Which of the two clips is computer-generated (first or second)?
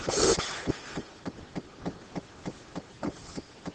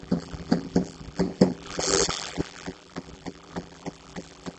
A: second